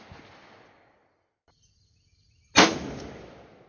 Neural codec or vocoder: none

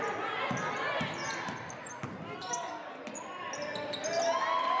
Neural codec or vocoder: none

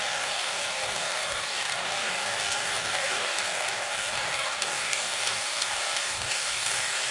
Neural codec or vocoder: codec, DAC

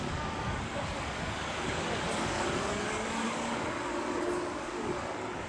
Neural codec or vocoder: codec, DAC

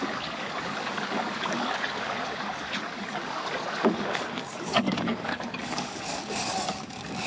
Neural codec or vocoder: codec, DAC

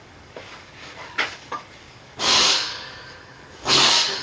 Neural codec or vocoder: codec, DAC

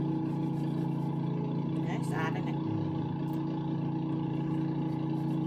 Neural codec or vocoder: none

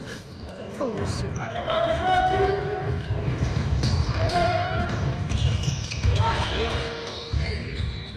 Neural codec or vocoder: codec, DAC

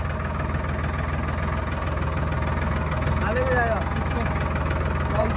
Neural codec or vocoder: none